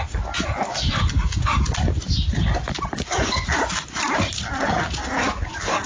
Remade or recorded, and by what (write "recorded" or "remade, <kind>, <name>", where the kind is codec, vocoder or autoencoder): recorded